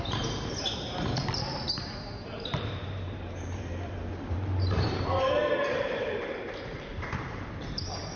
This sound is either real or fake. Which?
fake